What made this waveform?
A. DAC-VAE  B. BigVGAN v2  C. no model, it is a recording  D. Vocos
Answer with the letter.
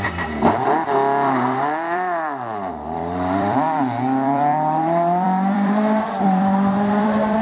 B